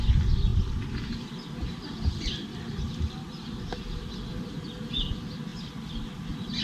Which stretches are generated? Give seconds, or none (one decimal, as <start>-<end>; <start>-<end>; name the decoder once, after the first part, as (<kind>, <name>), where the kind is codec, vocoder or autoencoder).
0.5-4.1 (vocoder, BigVGAN v2)